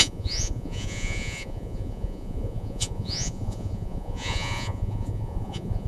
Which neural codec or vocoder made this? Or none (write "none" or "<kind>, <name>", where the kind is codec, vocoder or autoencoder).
vocoder, Vocos